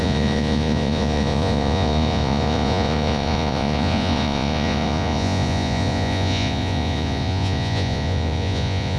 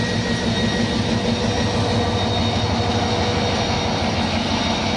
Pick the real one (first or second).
second